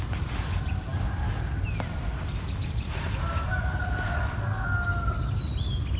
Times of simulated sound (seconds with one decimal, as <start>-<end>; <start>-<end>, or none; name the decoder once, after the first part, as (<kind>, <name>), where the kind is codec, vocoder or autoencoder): none